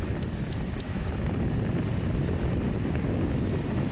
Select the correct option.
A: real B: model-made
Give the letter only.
A